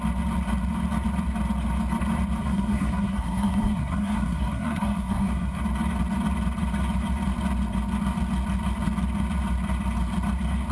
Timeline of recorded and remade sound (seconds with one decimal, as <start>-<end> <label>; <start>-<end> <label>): 0.0-2.4 recorded; 2.4-5.6 remade; 5.6-10.7 recorded

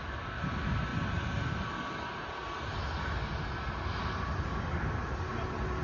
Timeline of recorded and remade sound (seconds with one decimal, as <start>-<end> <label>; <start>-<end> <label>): 0.0-5.8 recorded

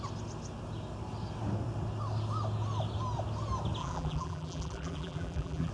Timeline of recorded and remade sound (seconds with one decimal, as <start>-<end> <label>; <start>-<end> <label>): 0.0-3.8 recorded; 3.8-5.7 remade

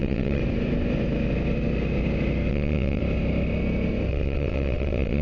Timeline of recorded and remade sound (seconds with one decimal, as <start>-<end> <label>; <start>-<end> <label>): 0.0-0.4 remade; 0.4-2.5 recorded; 2.5-3.0 remade; 3.0-4.1 recorded; 4.1-5.2 remade